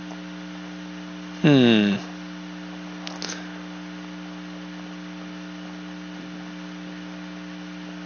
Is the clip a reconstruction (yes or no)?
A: no